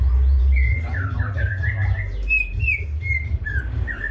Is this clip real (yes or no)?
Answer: no